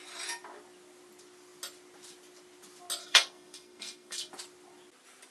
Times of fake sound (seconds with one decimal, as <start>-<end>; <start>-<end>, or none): 3.0-4.3